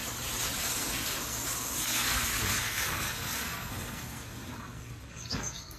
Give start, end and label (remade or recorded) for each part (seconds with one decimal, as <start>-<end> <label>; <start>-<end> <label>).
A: 0.0-0.6 recorded; 0.6-5.8 remade